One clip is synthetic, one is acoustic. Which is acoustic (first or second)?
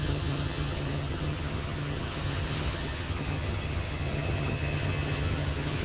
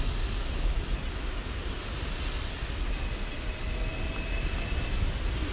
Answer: second